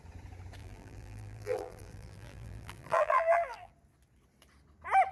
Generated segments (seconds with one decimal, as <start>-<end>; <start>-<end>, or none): 0.6-3.7